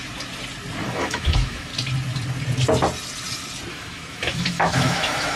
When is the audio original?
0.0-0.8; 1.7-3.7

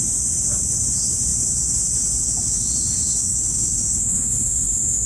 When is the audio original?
0.0-3.2